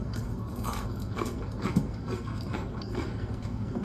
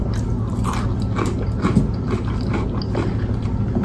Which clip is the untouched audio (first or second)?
second